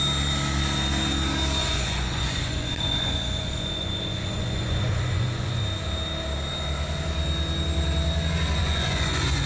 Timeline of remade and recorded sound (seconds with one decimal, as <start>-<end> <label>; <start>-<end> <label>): 0.0-1.6 recorded; 1.6-5.6 remade; 5.6-8.6 recorded; 8.6-9.5 remade